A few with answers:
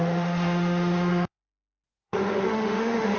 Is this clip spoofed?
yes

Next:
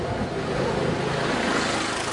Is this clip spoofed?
no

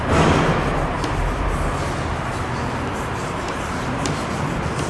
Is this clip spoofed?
yes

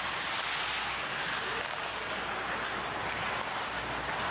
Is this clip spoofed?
no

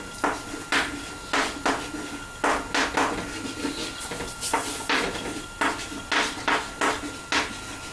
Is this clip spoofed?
no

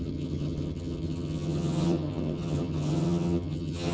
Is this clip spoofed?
yes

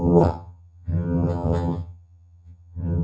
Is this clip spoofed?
yes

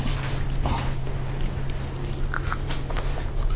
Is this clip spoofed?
no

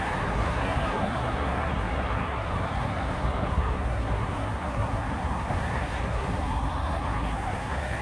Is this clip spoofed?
yes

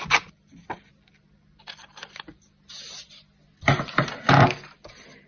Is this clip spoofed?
no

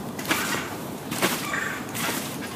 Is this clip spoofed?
yes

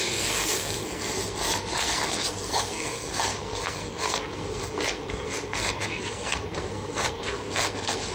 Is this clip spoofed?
yes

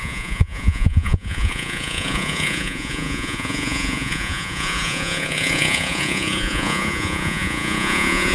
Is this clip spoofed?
yes